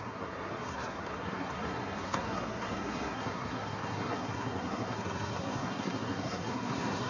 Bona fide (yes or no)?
no